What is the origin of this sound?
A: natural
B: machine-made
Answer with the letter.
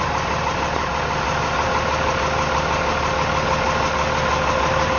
A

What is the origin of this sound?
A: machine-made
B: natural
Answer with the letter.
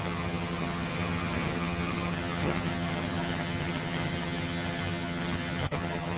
A